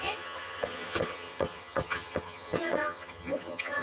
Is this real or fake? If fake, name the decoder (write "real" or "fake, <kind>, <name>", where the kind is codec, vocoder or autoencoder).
fake, vocoder, HiFi-GAN